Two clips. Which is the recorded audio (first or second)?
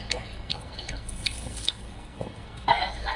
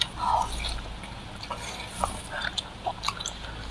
second